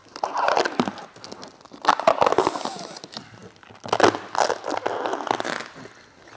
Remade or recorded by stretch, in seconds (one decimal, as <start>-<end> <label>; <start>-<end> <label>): 0.0-6.4 recorded